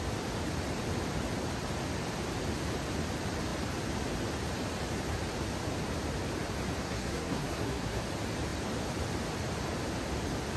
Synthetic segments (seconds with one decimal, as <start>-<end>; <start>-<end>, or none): 6.8-8.0